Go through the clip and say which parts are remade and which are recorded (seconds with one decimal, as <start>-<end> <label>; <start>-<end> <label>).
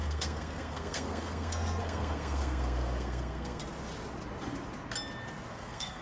0.0-3.6 remade; 3.6-5.5 recorded; 5.5-6.0 remade